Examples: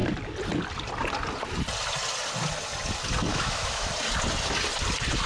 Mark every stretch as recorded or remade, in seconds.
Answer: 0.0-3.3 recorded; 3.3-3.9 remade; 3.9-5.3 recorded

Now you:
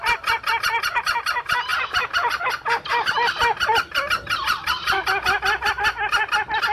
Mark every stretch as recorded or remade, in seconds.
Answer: 0.0-6.7 recorded

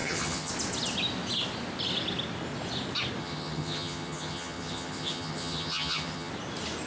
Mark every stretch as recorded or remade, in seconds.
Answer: 0.0-0.5 remade; 0.5-3.2 recorded; 3.2-6.3 remade; 6.3-6.9 recorded

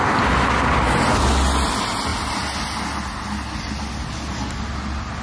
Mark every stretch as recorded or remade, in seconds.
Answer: 0.0-5.2 recorded

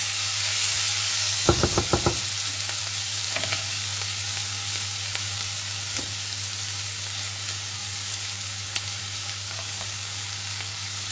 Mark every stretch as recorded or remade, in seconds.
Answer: 0.0-1.9 remade; 1.9-2.8 recorded; 2.8-11.1 remade

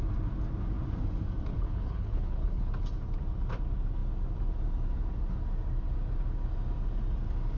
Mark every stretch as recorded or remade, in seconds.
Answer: 0.0-1.5 recorded; 1.5-2.7 remade; 2.7-7.6 recorded

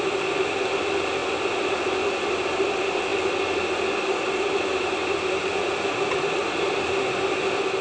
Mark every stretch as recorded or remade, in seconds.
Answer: 0.0-7.8 recorded